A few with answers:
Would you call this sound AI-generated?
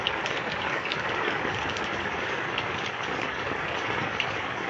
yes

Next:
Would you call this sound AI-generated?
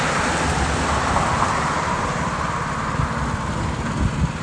no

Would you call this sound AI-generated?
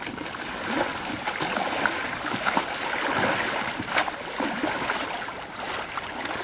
no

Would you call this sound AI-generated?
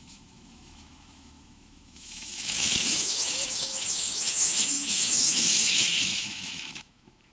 yes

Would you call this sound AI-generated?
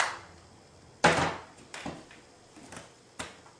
no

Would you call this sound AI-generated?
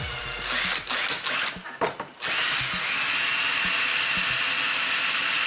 no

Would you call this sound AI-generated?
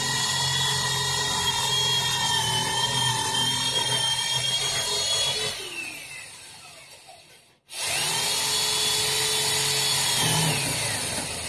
no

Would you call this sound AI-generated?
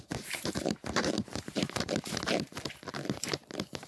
yes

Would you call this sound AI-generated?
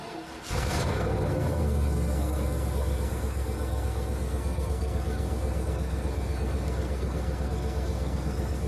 yes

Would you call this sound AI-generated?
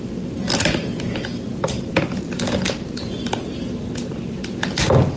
no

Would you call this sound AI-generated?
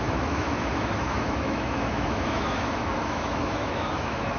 yes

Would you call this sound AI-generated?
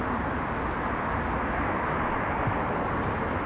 no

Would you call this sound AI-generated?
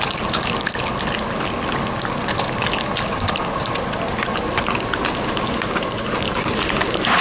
no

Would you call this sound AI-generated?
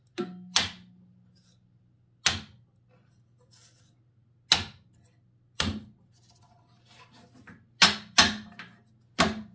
no